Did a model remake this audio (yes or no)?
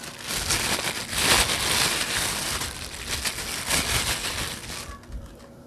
no